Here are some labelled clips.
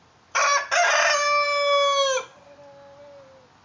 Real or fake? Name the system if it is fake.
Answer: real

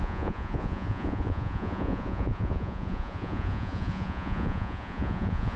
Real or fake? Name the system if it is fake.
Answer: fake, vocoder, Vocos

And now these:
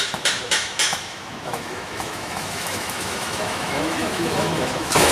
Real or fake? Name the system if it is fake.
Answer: fake, autoencoder, DAC-VAE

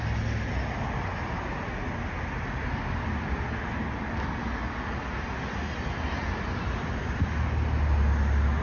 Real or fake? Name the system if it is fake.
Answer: real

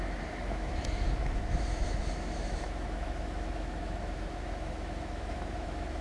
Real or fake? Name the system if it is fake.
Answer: fake, autoencoder, DAC-VAE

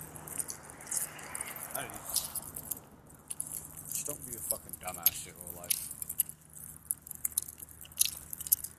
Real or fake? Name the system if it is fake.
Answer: real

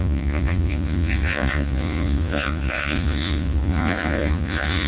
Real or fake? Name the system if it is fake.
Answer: fake, vocoder, Vocos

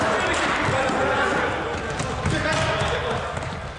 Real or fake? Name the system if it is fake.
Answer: real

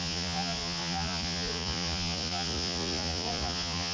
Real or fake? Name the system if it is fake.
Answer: fake, vocoder, Vocos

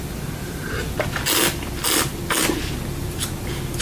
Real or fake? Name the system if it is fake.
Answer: real